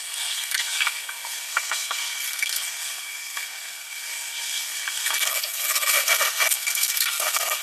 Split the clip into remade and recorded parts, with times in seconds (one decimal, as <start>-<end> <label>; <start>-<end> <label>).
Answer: 0.0-7.6 remade

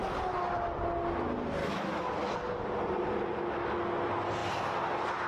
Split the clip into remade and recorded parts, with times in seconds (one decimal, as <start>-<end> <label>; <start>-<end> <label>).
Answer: 0.0-1.6 recorded; 1.6-2.1 remade; 2.1-5.3 recorded

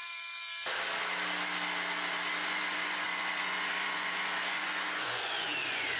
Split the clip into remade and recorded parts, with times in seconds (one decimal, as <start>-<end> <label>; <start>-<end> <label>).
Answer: 0.0-2.4 recorded; 2.4-6.0 remade